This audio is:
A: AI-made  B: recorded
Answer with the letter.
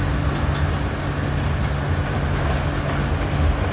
B